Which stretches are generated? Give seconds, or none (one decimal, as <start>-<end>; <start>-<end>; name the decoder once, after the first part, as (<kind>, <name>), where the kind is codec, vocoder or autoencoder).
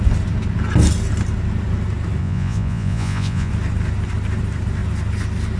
2.2-3.5 (vocoder, Vocos)